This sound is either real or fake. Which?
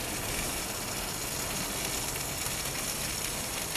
real